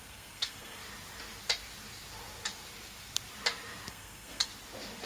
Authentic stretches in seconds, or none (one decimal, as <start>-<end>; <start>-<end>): 0.8-3.9; 4.5-5.1